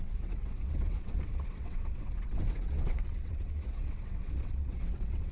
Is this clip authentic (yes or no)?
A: no